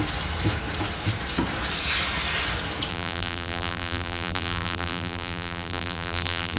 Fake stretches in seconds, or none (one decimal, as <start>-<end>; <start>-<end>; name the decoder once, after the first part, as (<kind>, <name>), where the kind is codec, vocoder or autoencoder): 2.9-6.6 (vocoder, BigVGAN v2)